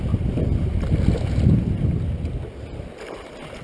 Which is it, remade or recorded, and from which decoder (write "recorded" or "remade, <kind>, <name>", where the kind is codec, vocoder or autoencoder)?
recorded